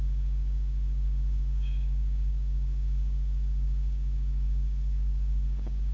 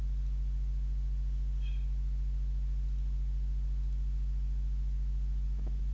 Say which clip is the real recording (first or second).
second